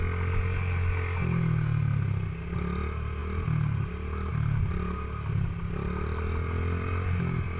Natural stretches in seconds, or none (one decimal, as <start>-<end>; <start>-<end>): 0.0-7.6